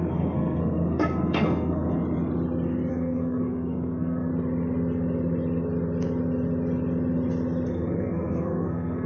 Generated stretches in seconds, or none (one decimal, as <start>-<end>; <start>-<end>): 0.0-2.0; 2.9-4.3; 7.7-9.1